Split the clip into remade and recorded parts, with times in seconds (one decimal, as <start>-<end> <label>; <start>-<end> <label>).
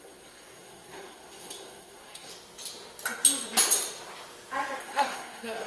0.0-2.3 remade; 2.3-4.8 recorded; 4.8-5.7 remade